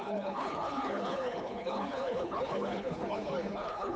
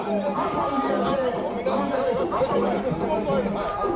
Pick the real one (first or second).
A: second